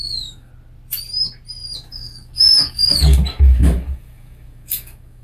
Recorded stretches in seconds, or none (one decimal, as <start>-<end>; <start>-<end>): 0.5-1.9

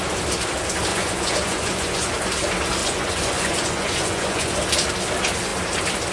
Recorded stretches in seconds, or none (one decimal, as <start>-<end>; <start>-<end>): 0.0-0.9; 2.1-2.8; 4.5-6.1

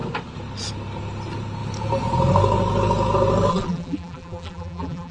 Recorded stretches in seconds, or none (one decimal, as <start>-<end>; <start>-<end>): 0.0-3.5

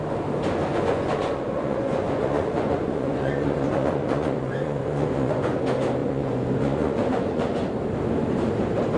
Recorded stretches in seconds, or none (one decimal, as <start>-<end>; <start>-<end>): 0.0-0.7; 5.6-6.0; 7.7-9.0

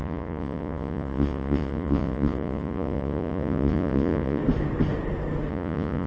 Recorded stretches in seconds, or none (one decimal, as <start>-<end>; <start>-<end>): 4.4-5.5

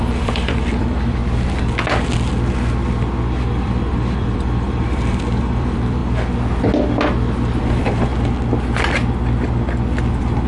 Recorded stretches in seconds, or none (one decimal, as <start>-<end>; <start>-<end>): 1.2-3.4; 6.0-7.6; 8.1-10.1